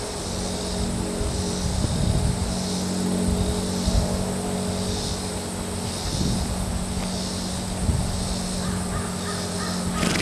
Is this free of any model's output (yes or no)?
yes